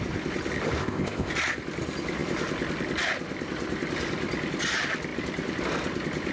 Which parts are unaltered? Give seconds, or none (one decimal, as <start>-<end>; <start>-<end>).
0.0-0.8; 1.3-6.3